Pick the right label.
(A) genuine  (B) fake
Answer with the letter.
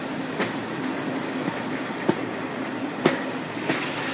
A